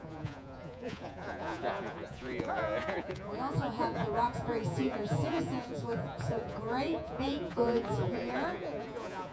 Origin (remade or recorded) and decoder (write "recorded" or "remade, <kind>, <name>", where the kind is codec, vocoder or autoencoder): remade, vocoder, Vocos